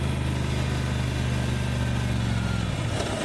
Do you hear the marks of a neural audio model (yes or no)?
no